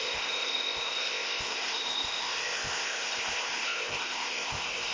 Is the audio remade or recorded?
remade